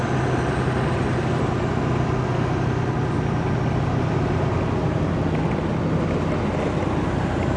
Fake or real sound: real